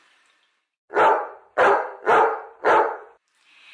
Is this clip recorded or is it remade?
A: recorded